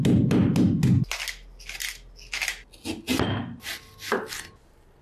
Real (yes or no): yes